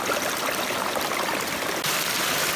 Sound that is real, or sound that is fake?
real